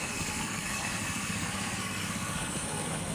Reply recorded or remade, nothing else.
remade